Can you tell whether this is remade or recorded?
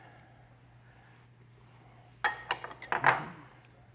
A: recorded